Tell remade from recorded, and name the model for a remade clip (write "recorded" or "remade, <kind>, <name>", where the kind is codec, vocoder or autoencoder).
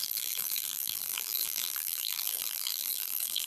remade, vocoder, BigVGAN v2